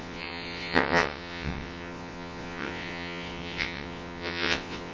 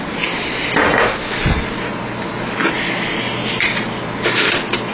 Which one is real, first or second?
second